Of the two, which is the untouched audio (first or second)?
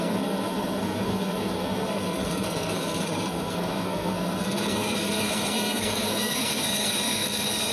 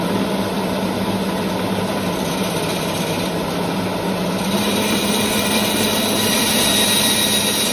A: second